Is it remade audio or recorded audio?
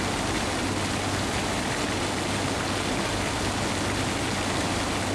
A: recorded